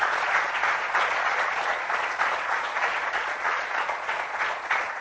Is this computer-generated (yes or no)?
yes